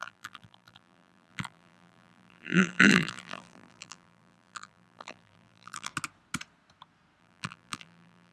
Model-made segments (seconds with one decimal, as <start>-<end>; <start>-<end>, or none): 0.0-5.9; 7.2-8.3